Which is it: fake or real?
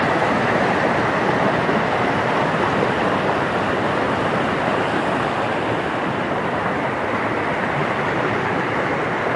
real